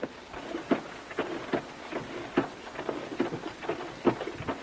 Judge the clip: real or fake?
real